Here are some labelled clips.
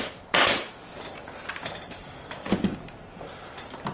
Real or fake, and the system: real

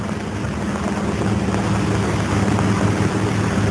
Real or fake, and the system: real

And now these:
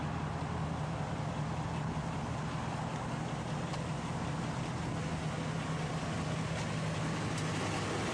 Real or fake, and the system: real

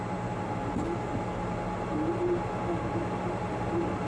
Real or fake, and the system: real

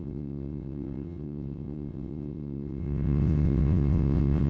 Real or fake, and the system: fake, vocoder, WaveNeXt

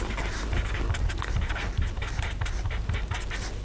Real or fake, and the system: real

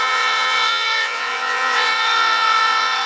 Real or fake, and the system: fake, vocoder, WaveNeXt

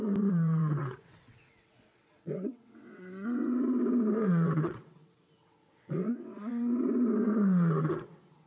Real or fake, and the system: fake, vocoder, WaveNeXt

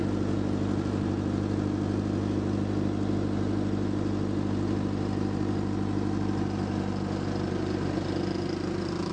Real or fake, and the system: real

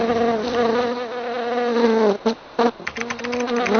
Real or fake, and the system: real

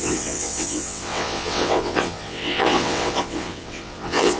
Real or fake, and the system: fake, vocoder, WaveNeXt